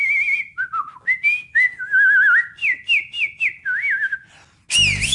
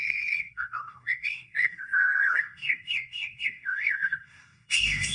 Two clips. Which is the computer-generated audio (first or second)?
second